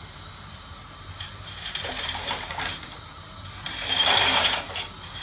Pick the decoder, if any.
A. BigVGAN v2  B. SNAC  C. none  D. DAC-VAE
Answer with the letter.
A